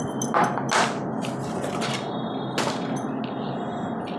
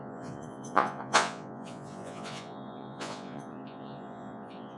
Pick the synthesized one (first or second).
second